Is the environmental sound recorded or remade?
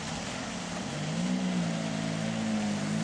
recorded